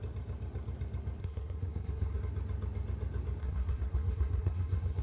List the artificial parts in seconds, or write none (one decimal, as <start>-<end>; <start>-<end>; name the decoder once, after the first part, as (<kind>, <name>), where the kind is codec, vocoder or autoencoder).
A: 1.2-2.2 (codec, SNAC); 3.4-5.0